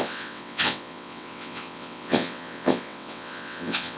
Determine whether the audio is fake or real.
fake